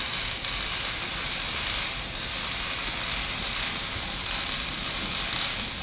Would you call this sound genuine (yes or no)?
yes